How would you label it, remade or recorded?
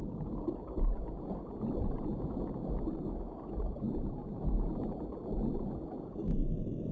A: recorded